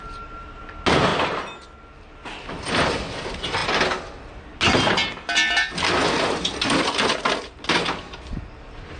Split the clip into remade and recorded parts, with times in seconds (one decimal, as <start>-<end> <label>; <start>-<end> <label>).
0.0-9.0 recorded